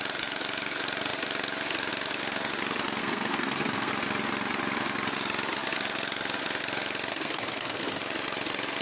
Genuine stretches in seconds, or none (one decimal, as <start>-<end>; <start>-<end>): 0.0-3.0; 3.9-7.1; 8.0-8.8